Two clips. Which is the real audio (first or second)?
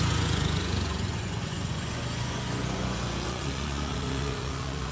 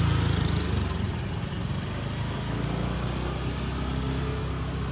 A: second